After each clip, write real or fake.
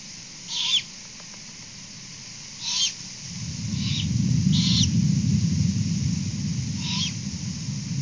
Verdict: real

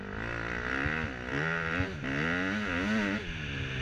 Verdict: real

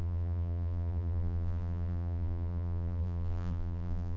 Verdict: fake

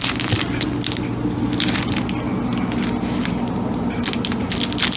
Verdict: real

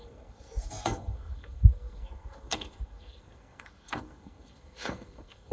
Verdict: fake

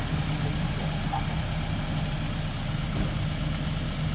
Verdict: real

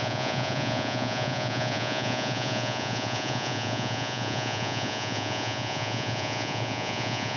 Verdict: fake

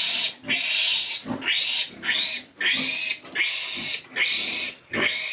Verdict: real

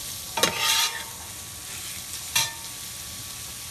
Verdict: real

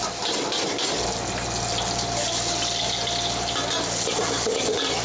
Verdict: real